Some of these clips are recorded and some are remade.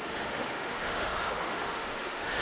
remade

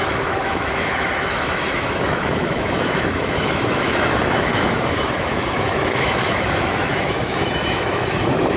remade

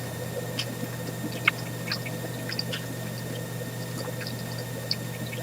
recorded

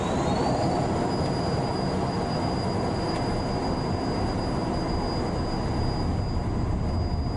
recorded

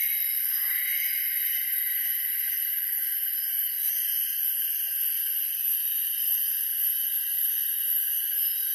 recorded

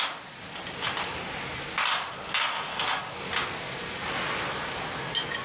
recorded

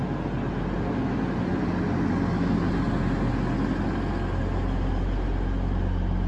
recorded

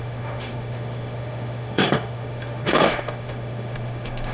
remade